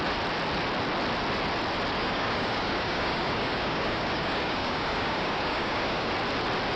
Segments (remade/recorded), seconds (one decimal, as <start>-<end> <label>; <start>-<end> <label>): 0.0-2.0 recorded; 2.0-6.1 remade; 6.1-6.8 recorded